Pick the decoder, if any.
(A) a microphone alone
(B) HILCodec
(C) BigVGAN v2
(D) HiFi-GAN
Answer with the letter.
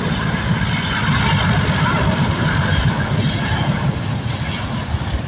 A